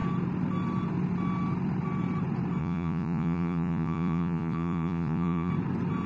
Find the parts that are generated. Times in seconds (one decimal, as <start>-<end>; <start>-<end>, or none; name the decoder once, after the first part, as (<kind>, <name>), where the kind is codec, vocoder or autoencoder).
2.6-5.5 (vocoder, Vocos)